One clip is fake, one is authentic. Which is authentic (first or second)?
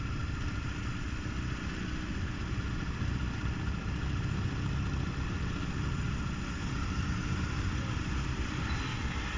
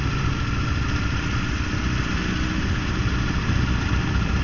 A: second